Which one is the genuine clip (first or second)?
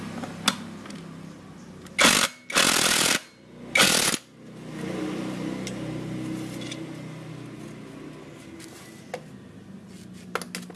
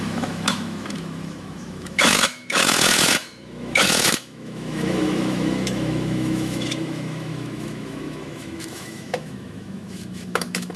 first